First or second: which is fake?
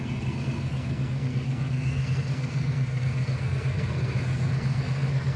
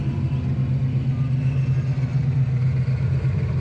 first